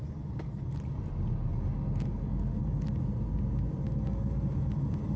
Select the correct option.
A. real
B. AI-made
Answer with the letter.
A